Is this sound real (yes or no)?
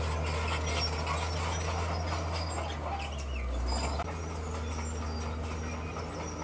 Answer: yes